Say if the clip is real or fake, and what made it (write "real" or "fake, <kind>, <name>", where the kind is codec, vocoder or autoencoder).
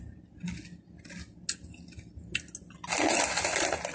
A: real